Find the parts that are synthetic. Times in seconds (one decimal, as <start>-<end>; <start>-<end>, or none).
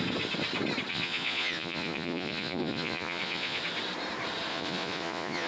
0.9-3.6; 4.5-5.5